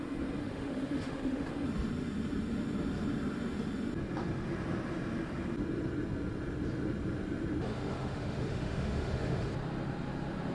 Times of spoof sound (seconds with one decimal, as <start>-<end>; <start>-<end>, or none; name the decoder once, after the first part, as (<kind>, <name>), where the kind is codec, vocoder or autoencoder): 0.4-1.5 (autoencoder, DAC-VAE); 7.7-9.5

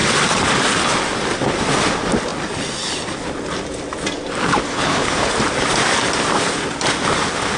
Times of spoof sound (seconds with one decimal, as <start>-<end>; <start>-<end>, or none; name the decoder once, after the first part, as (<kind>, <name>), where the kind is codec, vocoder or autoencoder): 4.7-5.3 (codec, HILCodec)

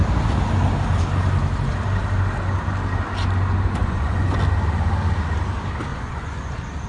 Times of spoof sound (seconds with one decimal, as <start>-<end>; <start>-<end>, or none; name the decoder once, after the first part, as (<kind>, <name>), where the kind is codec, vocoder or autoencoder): 3.8-4.4 (vocoder, Vocos); 5.9-6.5

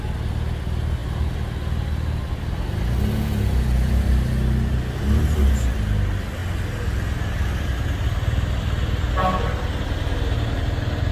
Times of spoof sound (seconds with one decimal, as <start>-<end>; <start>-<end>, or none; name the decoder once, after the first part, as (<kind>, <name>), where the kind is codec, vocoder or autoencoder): none

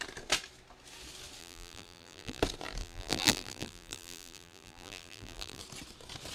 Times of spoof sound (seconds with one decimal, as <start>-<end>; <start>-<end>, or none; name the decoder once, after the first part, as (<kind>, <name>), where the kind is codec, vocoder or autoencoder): 1.4-2.4 (vocoder, BigVGAN v2); 2.8-5.6

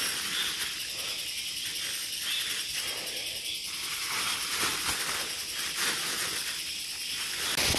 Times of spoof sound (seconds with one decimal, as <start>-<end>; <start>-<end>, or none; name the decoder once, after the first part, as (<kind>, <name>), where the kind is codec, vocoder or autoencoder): none